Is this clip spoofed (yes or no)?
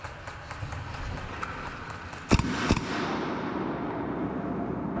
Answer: no